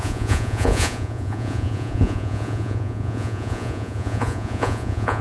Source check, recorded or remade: remade